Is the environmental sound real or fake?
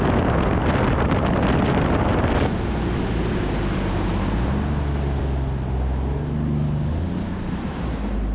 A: real